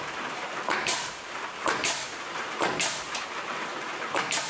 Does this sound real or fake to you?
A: fake